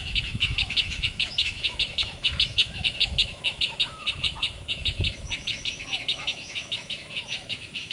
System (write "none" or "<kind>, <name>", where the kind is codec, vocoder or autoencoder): autoencoder, DAC-VAE